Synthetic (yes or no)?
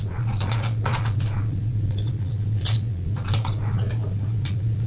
yes